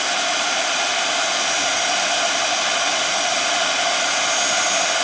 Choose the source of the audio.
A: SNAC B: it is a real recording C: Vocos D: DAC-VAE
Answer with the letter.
B